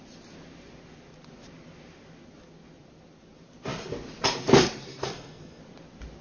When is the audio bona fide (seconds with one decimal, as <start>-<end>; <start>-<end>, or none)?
0.0-4.9; 5.6-6.2